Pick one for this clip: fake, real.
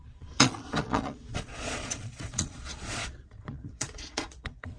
fake